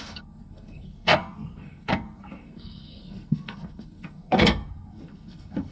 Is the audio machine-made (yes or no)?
yes